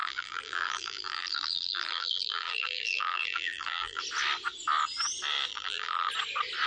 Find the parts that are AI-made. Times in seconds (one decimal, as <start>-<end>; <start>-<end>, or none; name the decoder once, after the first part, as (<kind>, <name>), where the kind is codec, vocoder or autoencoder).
0.0-4.0 (vocoder, BigVGAN v2); 5.5-6.1